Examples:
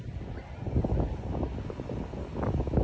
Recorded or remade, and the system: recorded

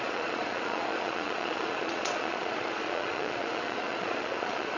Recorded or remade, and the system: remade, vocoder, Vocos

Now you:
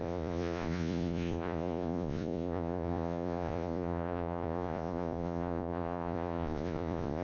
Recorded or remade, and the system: remade, vocoder, Vocos